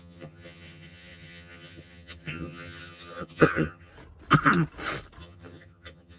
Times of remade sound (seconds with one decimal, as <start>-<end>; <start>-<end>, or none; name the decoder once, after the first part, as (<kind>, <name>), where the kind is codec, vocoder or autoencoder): 0.0-3.9 (vocoder, HiFi-GAN); 5.2-6.2